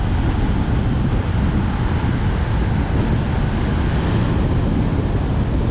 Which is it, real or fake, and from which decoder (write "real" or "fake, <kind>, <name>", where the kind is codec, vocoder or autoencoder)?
real